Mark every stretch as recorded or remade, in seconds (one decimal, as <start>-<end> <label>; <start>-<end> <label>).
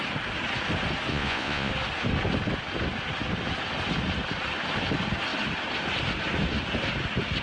0.0-1.1 recorded; 1.1-1.7 remade; 1.7-7.4 recorded